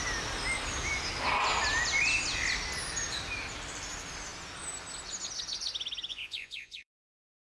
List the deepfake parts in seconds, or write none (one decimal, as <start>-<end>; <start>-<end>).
6.1-7.6